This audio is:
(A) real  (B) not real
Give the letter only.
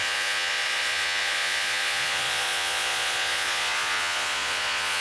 B